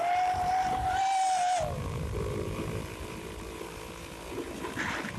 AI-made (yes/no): yes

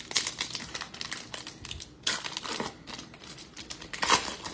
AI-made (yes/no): no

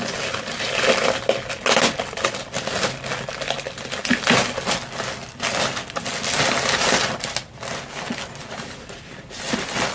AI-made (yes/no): no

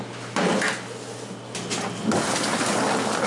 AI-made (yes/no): no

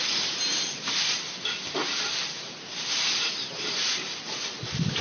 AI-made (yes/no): no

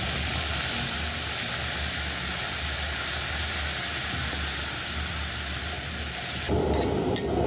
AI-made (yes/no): no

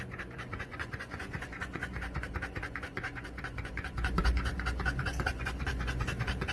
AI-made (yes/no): yes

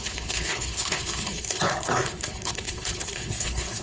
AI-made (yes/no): yes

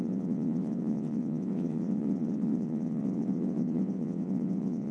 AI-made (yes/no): yes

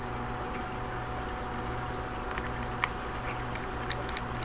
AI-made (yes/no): no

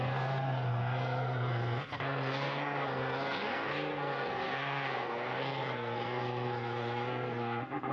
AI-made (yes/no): yes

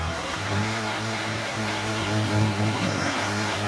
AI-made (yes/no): yes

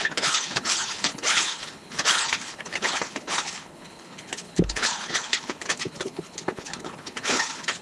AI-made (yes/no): yes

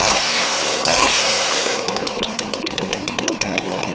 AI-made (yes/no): yes